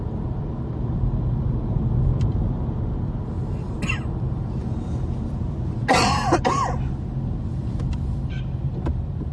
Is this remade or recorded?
recorded